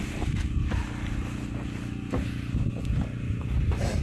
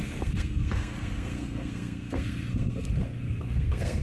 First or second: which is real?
first